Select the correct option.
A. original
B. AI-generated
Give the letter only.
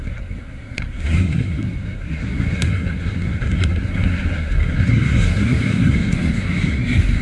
B